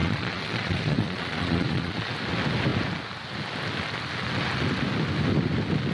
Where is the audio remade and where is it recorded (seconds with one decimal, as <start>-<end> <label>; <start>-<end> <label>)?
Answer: 0.0-2.1 remade; 2.1-5.9 recorded

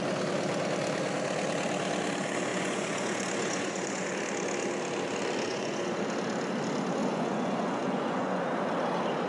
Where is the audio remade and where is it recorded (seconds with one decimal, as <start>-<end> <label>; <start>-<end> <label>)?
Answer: 0.0-2.5 recorded; 2.5-4.1 remade; 4.1-5.5 recorded; 5.5-6.0 remade; 6.0-7.0 recorded; 7.0-8.4 remade; 8.4-9.3 recorded

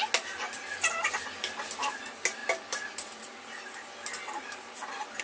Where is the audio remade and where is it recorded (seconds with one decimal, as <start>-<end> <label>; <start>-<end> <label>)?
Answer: 0.0-5.2 recorded

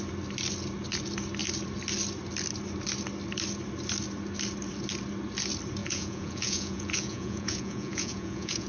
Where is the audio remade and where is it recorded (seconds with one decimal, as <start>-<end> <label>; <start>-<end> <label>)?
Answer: 0.0-5.8 recorded; 5.8-8.7 remade